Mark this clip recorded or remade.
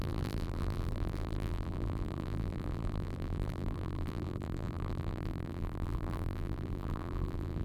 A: remade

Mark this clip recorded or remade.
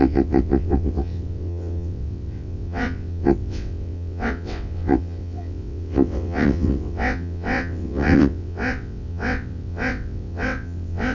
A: remade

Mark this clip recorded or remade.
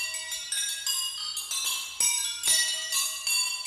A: recorded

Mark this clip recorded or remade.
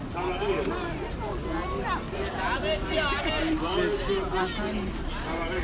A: recorded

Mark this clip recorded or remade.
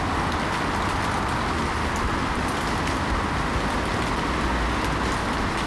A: recorded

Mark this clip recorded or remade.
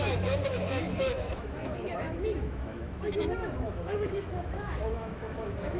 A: remade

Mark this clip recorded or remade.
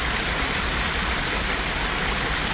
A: recorded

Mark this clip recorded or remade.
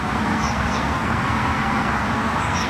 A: remade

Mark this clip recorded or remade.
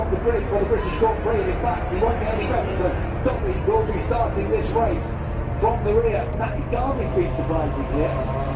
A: recorded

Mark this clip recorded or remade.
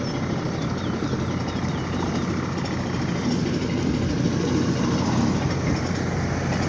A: recorded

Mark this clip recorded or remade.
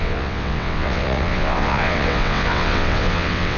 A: remade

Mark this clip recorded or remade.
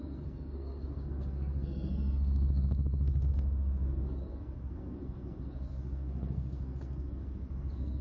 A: remade